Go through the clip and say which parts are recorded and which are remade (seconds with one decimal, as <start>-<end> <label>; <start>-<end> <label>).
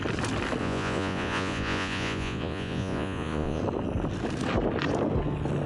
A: 0.0-0.6 recorded; 0.6-3.6 remade; 3.6-5.7 recorded